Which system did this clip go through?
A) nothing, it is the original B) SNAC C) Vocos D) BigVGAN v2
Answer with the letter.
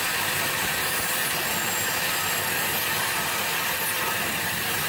A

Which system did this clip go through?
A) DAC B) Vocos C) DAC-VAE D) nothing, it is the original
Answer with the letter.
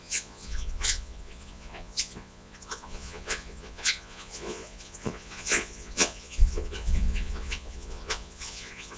B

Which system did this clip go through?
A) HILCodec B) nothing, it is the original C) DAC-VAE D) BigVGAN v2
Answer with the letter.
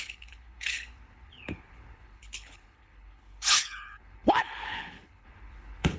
A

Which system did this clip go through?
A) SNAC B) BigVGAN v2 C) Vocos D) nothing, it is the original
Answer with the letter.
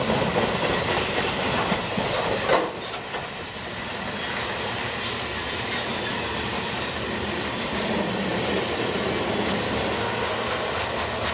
D